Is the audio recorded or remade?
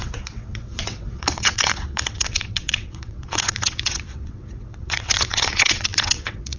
remade